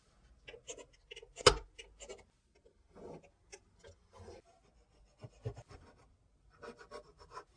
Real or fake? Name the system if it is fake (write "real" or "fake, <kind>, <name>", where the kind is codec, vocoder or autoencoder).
real